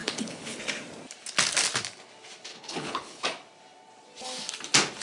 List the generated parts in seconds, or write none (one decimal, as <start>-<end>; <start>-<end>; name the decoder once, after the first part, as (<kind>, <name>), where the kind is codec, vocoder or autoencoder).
0.0-0.6 (codec, HILCodec); 2.5-3.2